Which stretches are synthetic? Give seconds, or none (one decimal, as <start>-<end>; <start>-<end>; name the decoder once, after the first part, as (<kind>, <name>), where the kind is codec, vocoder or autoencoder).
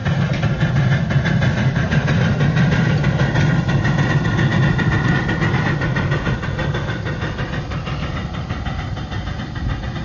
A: none